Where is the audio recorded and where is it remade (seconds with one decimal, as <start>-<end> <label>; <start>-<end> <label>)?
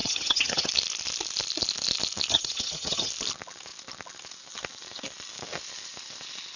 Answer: 0.0-0.7 remade; 0.7-2.3 recorded; 2.3-3.1 remade; 3.1-6.6 recorded